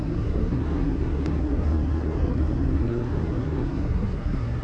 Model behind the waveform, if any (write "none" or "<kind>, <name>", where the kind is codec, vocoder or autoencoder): codec, SNAC